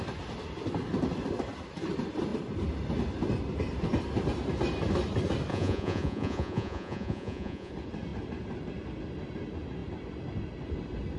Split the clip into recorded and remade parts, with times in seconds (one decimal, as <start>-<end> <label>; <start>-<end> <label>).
0.0-5.5 recorded; 5.5-7.7 remade; 7.7-11.2 recorded